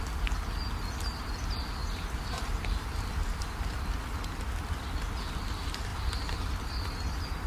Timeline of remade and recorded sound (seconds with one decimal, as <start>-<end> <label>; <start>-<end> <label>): 0.0-1.8 recorded; 1.8-3.9 remade; 3.9-7.5 recorded